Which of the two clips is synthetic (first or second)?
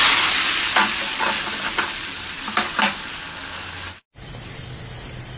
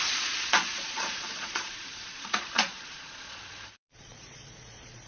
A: second